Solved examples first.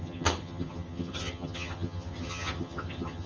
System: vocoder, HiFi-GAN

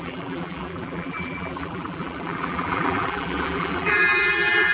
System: vocoder, BigVGAN v2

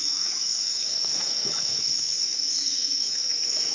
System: autoencoder, DAC-VAE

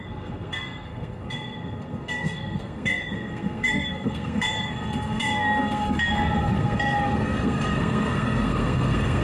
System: codec, SNAC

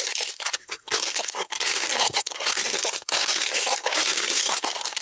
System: codec, SNAC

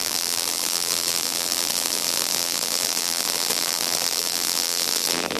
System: vocoder, BigVGAN v2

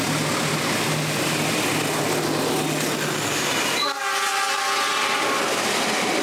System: none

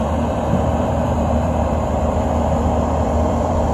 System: vocoder, BigVGAN v2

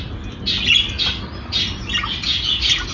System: none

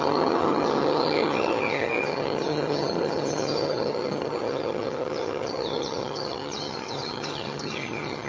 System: vocoder, HiFi-GAN